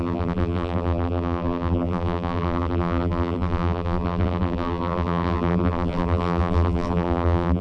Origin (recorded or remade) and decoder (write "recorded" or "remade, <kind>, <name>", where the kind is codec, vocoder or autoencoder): remade, vocoder, BigVGAN v2